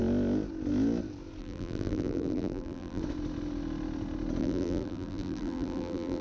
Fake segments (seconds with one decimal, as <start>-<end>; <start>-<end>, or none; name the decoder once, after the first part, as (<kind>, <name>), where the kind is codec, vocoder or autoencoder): 1.4-3.0 (vocoder, BigVGAN v2); 4.4-6.2